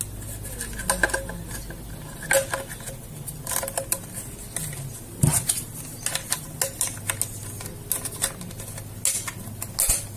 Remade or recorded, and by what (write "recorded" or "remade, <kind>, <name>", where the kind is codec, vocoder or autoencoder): recorded